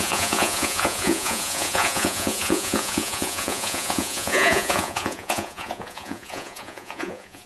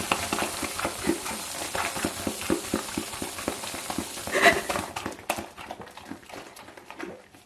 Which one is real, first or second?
second